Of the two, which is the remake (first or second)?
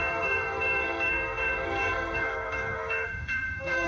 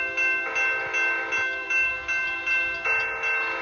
first